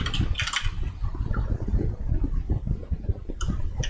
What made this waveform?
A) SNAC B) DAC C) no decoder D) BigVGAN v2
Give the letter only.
C